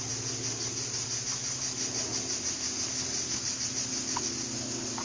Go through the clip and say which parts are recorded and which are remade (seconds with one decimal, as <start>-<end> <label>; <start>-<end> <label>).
0.0-5.0 recorded